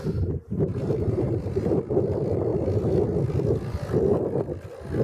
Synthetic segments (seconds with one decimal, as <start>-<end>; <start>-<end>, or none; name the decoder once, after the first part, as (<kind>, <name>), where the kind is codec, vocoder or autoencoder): 0.7-1.7 (vocoder, BigVGAN v2)